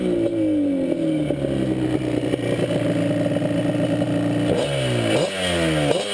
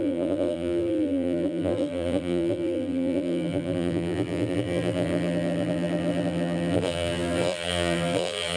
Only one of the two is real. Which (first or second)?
first